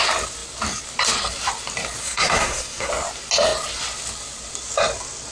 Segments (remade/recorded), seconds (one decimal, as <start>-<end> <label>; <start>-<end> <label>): 0.0-2.0 recorded; 2.0-2.9 remade; 2.9-5.3 recorded